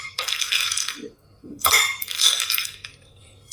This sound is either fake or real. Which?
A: fake